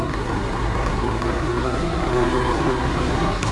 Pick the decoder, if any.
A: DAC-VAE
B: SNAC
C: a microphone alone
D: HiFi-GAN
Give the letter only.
B